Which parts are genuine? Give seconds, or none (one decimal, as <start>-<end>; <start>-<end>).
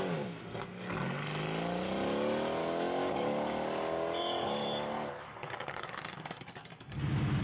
0.0-2.6; 7.0-7.4